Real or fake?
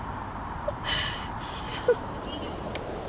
fake